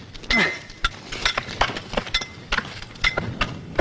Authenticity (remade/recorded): recorded